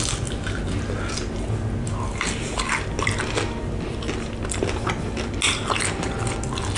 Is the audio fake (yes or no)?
no